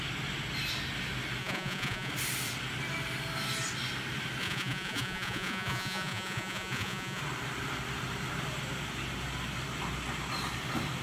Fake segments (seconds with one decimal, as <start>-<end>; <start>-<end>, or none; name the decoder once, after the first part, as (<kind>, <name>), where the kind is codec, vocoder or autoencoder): 1.4-2.1 (vocoder, Vocos); 4.4-7.2